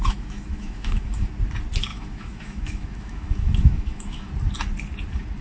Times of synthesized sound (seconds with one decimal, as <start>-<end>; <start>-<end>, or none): 0.0-1.3; 1.9-4.3